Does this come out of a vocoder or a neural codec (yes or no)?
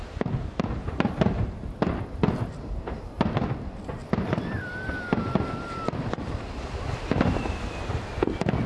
no